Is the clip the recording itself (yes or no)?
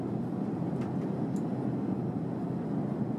yes